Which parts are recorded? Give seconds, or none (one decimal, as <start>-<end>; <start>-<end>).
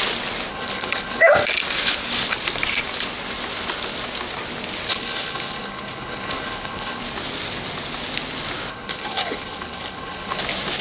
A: 0.0-0.5; 1.3-4.9; 7.0-8.7; 10.4-10.8